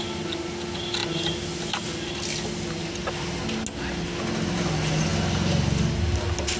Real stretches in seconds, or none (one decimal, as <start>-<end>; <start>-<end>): 0.0-6.6